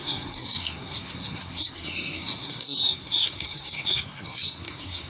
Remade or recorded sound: remade